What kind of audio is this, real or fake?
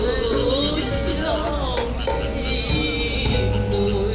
real